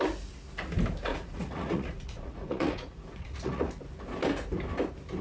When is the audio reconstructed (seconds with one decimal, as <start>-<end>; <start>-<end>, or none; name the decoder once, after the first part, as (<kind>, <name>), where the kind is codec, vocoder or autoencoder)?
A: 1.1-3.7 (vocoder, Vocos)